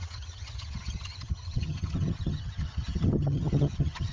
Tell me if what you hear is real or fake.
fake